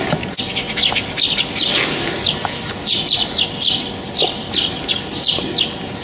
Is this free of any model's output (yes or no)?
yes